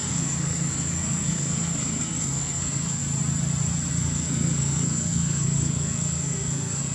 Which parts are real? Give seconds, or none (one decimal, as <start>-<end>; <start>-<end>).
3.0-3.9